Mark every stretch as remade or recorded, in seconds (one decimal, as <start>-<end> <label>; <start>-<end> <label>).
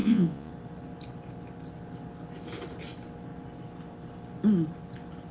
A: 0.0-0.5 remade; 0.5-5.3 recorded